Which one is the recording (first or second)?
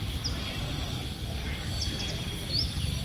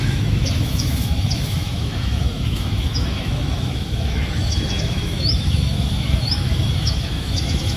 first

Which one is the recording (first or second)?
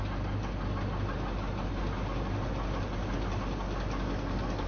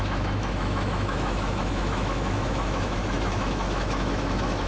first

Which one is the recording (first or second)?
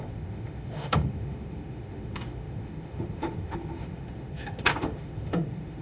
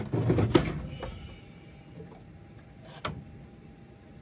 second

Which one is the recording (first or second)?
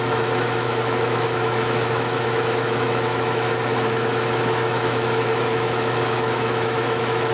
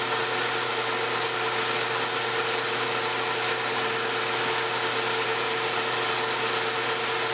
second